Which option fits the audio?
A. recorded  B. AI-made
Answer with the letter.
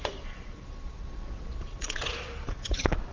B